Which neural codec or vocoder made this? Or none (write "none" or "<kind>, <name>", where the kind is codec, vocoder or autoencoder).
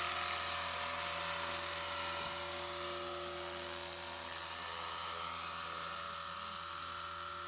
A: none